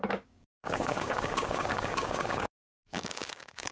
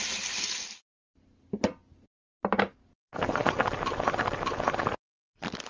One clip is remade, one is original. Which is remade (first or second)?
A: first